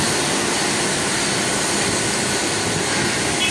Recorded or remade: recorded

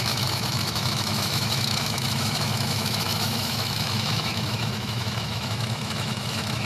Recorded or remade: remade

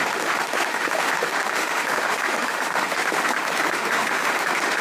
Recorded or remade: remade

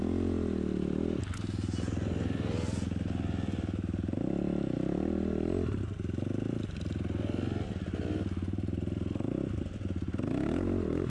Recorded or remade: recorded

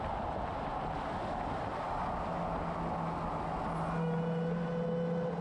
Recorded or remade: recorded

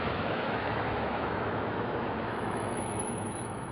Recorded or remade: remade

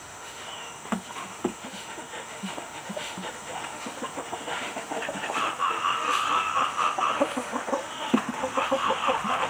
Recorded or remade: remade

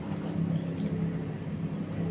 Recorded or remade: recorded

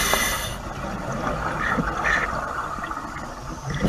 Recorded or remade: recorded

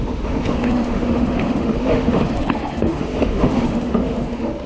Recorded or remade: remade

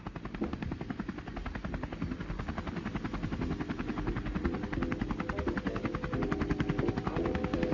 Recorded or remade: recorded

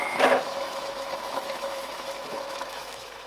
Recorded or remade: remade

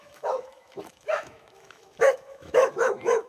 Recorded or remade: remade